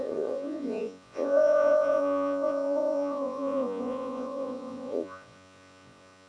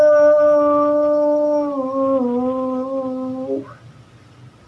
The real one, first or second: second